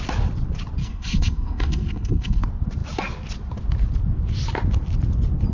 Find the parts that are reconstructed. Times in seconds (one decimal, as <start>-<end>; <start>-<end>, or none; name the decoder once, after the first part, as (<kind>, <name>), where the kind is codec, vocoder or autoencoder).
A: 0.8-2.4 (codec, SNAC)